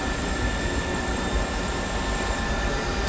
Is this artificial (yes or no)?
no